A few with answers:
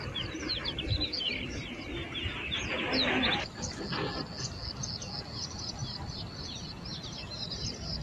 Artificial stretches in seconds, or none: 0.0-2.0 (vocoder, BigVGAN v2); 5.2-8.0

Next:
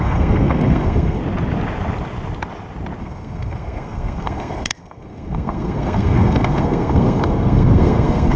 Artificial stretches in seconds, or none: 0.0-1.2 (codec, SNAC); 3.0-8.4

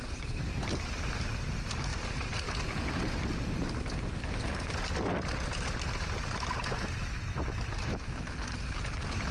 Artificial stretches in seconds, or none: none

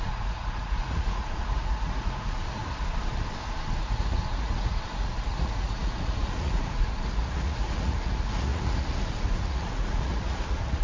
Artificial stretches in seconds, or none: 0.0-2.6 (vocoder, Vocos); 3.8-10.8

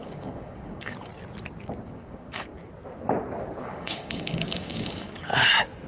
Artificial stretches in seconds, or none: 0.0-1.1 (codec, DAC); 1.8-2.5; 3.6-5.3